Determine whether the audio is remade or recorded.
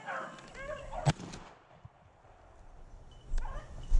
recorded